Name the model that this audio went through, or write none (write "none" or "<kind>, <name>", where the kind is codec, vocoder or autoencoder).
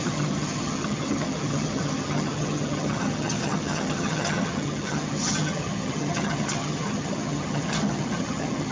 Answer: vocoder, HiFi-GAN